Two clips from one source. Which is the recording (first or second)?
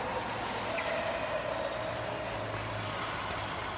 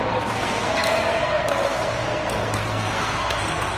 first